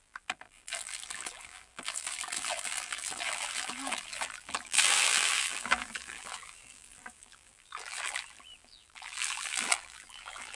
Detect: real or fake fake